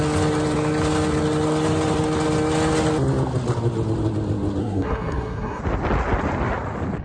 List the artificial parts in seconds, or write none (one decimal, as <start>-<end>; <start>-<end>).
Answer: 4.6-5.6